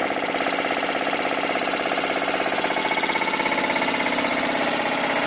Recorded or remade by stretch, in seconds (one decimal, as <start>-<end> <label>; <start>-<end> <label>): 0.0-2.8 remade; 2.8-4.3 recorded; 4.3-5.3 remade